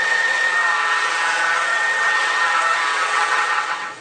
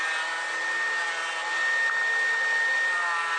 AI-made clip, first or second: first